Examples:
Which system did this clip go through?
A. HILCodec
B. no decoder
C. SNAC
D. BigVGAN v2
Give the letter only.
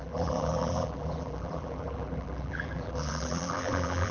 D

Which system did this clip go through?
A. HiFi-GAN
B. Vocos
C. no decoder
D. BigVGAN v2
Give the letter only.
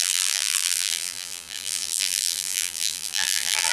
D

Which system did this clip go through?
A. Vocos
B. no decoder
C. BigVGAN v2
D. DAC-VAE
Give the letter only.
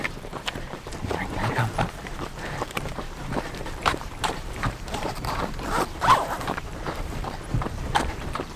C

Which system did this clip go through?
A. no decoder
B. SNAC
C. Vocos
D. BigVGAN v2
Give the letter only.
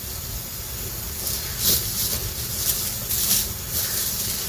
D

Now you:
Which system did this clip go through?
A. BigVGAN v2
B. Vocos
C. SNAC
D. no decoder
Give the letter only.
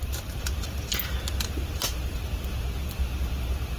D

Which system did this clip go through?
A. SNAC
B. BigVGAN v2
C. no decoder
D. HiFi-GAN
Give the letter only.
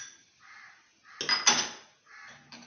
C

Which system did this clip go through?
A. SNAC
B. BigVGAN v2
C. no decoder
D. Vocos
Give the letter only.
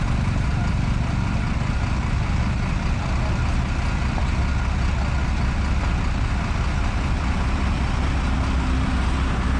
C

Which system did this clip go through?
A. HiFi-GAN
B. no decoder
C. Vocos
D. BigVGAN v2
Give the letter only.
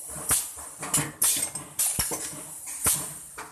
B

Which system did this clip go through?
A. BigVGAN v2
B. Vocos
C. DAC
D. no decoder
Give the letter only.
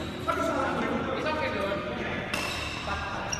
D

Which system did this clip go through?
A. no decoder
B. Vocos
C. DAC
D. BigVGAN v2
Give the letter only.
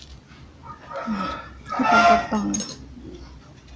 A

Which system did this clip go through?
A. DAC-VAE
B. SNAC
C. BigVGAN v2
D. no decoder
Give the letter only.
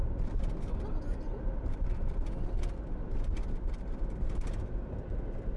D